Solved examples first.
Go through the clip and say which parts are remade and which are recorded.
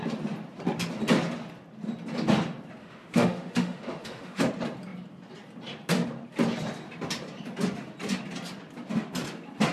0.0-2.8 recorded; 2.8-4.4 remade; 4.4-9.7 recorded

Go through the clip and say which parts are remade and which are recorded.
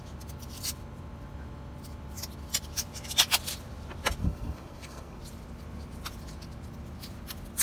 0.0-4.2 recorded; 4.2-5.2 remade; 5.2-7.6 recorded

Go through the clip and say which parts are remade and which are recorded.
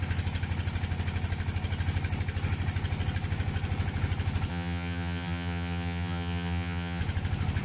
0.0-4.5 recorded; 4.5-7.0 remade; 7.0-7.6 recorded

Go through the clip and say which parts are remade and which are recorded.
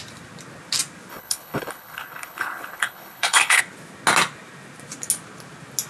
0.0-1.1 recorded; 1.1-3.6 remade; 3.6-5.9 recorded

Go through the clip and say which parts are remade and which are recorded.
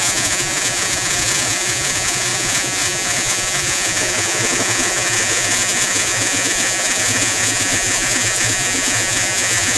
0.0-9.8 remade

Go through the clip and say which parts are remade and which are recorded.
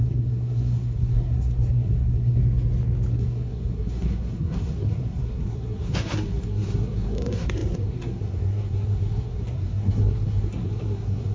0.0-2.4 remade; 2.4-3.1 recorded; 3.1-11.3 remade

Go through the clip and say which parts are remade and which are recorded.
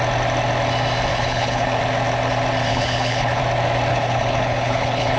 0.0-1.1 recorded; 1.1-1.8 remade; 1.8-2.7 recorded; 2.7-3.4 remade; 3.4-3.9 recorded; 3.9-5.2 remade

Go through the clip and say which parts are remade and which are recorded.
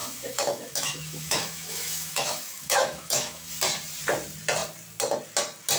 0.0-3.5 remade; 3.5-5.8 recorded